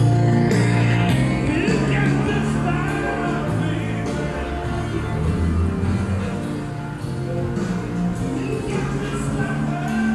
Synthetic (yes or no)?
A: no